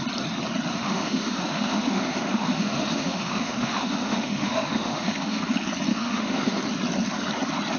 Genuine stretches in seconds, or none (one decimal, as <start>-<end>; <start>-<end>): 0.0-0.7; 5.4-5.9; 6.6-7.8